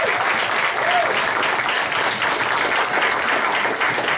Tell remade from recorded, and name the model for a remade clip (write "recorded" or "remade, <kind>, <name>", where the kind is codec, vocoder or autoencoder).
recorded